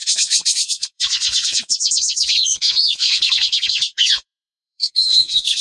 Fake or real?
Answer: fake